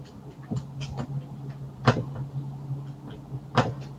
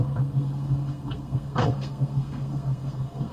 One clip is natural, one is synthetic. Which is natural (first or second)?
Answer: first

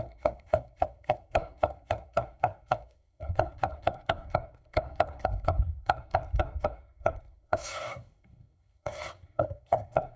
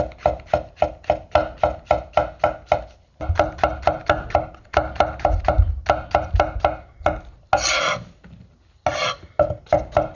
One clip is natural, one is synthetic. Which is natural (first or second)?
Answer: second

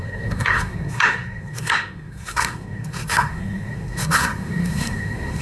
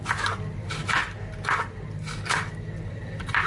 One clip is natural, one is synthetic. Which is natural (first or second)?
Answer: second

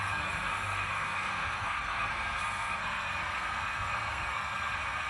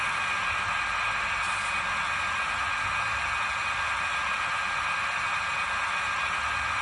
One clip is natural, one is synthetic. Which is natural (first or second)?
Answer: second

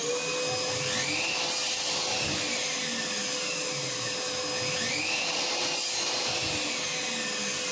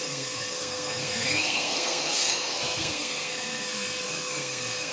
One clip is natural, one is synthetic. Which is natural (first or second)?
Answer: first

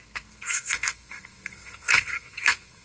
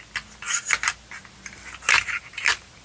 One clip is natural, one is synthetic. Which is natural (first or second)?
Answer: second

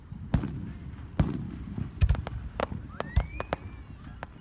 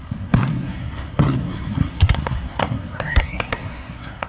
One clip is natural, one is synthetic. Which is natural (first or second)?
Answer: first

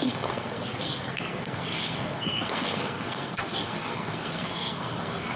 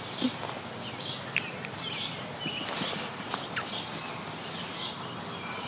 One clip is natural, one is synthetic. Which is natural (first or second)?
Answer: second